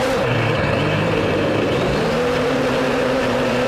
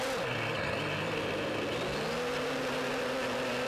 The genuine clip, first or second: second